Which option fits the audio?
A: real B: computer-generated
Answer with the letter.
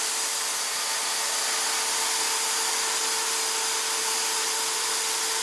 A